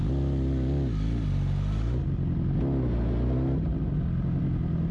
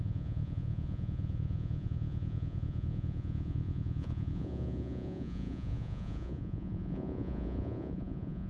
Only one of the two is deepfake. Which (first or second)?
second